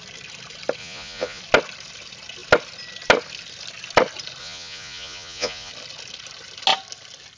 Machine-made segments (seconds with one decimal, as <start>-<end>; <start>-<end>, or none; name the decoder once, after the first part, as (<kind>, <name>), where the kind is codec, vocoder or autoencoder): 0.8-1.4 (vocoder, Vocos); 4.4-5.7